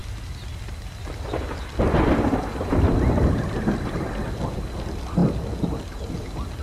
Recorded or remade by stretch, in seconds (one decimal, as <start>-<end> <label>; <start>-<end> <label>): 0.0-6.6 recorded